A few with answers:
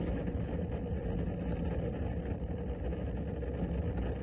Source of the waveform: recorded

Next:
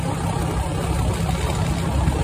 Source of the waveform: recorded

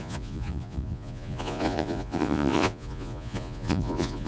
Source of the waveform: remade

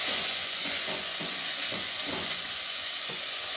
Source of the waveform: remade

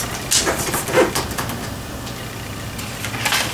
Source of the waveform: recorded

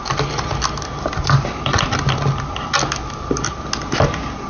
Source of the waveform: recorded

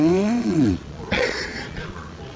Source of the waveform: remade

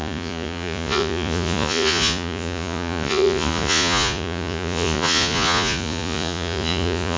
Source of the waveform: remade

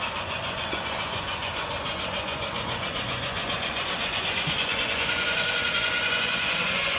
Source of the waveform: remade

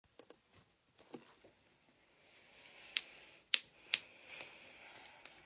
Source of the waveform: recorded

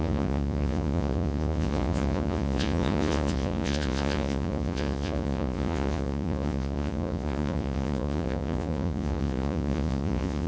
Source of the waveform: remade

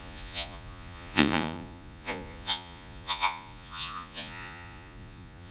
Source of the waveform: remade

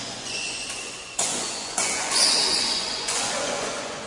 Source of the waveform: remade